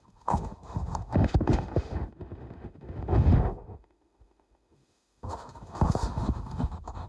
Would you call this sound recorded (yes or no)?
no